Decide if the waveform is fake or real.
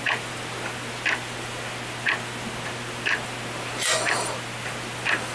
real